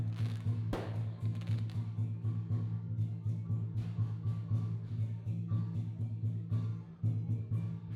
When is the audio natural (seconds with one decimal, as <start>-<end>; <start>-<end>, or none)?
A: 6.7-7.4